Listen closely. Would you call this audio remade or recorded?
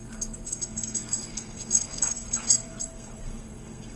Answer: remade